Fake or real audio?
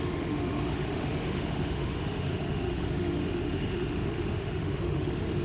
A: fake